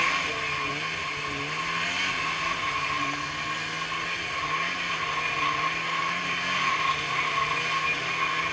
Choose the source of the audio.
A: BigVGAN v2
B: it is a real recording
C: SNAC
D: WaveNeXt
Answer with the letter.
B